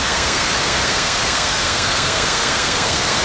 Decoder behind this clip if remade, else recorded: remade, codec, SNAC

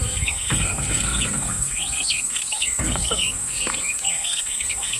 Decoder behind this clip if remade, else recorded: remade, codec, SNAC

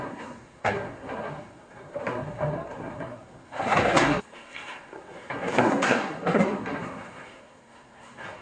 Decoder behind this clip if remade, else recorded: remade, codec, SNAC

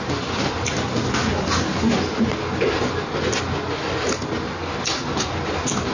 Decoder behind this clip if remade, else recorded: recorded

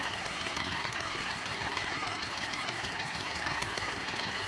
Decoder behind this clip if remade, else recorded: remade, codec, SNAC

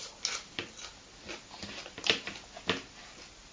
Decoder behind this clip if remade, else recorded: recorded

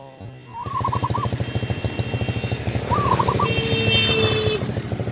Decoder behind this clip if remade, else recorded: recorded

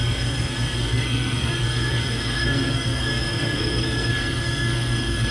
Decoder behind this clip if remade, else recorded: remade, codec, SNAC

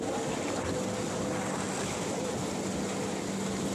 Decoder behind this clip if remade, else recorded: recorded